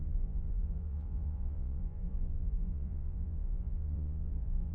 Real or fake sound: fake